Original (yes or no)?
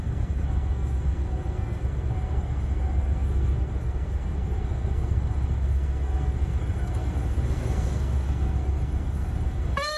no